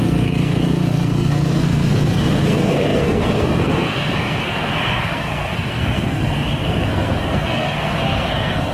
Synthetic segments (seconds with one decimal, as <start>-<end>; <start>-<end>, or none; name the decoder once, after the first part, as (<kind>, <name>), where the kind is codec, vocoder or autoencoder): 0.0-8.7 (codec, SNAC)